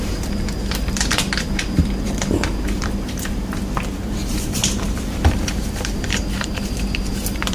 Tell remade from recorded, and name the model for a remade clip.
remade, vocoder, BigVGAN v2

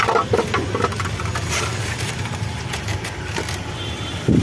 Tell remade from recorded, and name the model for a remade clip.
remade, vocoder, BigVGAN v2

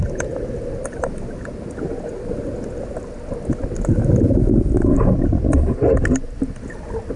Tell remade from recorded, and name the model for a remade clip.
recorded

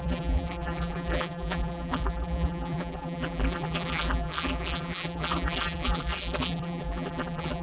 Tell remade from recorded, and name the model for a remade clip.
remade, vocoder, BigVGAN v2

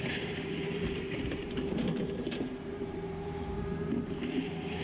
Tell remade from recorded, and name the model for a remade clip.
remade, vocoder, BigVGAN v2